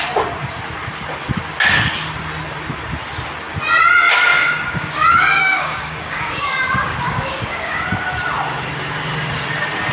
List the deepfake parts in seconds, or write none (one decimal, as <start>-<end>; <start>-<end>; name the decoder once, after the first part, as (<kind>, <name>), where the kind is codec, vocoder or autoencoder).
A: 4.3-7.8 (codec, DAC)